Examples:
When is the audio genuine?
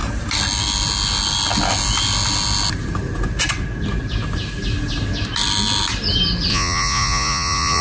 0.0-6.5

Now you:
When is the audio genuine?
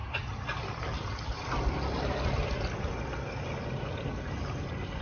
0.0-5.0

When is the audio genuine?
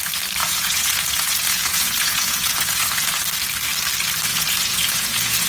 0.0-0.4; 3.2-4.3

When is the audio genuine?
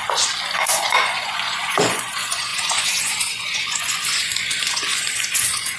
0.0-0.5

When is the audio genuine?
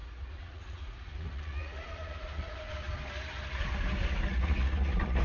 2.7-4.3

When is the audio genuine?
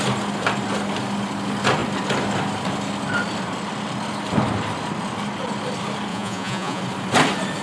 0.0-6.1; 6.8-7.6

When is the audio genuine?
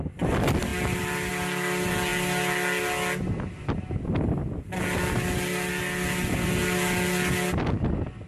0.0-8.3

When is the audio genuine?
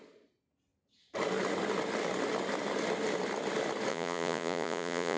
0.0-3.9